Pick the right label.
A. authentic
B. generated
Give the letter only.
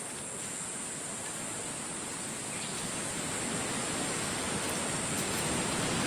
A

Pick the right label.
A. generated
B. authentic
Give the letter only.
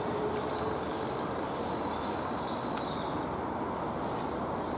B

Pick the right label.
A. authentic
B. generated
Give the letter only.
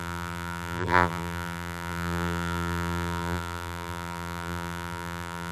B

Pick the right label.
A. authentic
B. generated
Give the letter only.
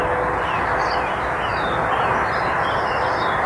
A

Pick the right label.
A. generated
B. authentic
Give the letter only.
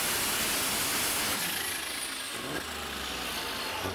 B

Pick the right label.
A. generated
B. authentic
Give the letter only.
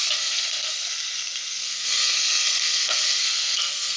A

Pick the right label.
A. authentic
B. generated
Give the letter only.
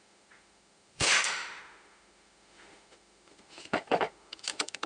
B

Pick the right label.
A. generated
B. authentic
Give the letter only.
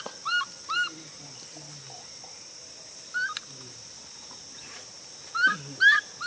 B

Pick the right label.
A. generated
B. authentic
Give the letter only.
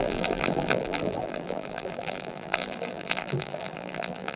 A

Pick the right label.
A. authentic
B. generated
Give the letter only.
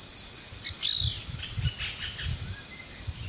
A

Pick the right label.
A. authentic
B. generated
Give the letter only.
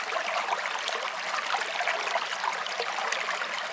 A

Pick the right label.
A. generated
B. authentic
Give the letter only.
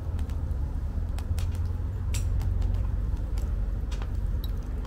A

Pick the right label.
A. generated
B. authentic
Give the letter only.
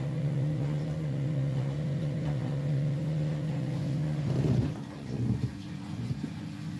A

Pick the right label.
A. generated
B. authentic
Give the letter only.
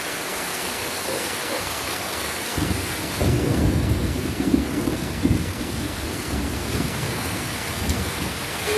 A